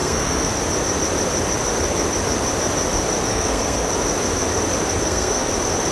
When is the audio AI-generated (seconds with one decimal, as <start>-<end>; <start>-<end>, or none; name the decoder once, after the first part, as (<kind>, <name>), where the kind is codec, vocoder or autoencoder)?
0.0-0.5 (codec, SNAC); 3.3-3.9; 5.0-5.5